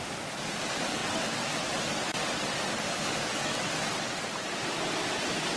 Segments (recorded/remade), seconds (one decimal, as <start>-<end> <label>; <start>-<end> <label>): 0.0-1.0 recorded; 1.0-1.8 remade; 1.8-3.4 recorded; 3.4-4.2 remade; 4.2-5.6 recorded

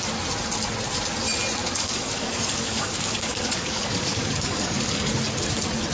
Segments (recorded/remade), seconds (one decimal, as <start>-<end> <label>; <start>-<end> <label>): 0.0-1.6 recorded; 1.6-5.1 remade; 5.1-5.9 recorded

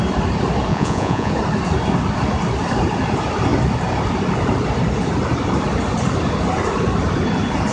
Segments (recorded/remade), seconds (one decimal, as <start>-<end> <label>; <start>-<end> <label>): 0.0-0.7 recorded; 0.7-1.3 remade; 1.3-7.7 recorded

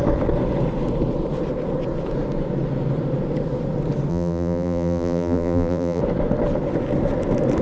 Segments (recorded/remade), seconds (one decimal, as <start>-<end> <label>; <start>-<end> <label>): 0.0-4.1 recorded; 4.1-6.0 remade; 6.0-7.6 recorded

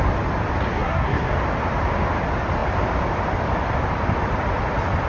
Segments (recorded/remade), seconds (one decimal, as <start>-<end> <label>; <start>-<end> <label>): 0.0-0.7 recorded; 0.7-1.3 remade; 1.3-5.1 recorded

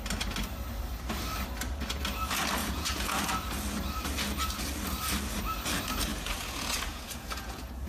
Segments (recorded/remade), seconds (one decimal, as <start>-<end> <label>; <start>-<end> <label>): 0.0-2.6 recorded; 2.6-3.2 remade; 3.2-6.1 recorded; 6.1-7.9 remade

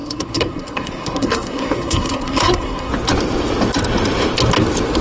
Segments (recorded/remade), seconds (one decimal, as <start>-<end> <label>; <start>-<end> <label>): 0.0-2.9 remade; 2.9-5.0 recorded

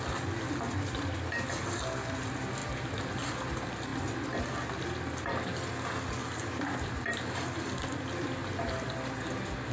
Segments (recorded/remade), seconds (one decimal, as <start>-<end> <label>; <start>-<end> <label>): 0.0-2.6 recorded; 2.6-3.1 remade; 3.1-6.2 recorded; 6.2-7.7 remade; 7.7-9.7 recorded